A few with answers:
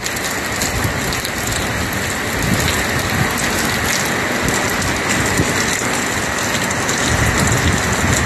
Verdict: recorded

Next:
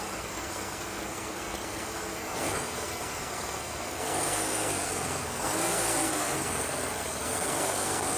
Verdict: remade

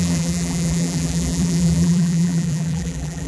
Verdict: remade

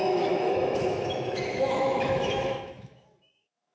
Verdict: remade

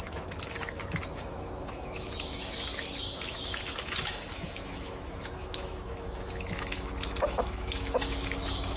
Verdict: remade